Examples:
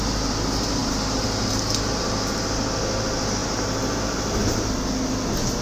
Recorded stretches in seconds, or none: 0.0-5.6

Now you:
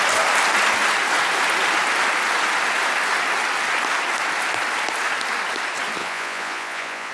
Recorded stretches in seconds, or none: 0.0-6.0

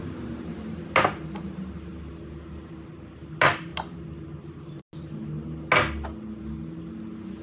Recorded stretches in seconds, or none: 0.0-7.4

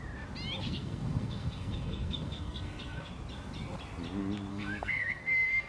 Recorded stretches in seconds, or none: 0.0-0.6; 3.1-4.5

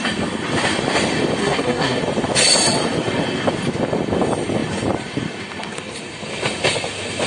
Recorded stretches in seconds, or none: 0.0-1.4; 2.0-7.3